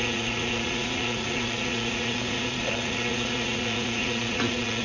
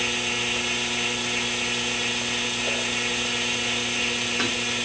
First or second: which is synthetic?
first